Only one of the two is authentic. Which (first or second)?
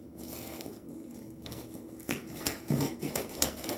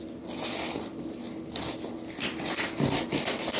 second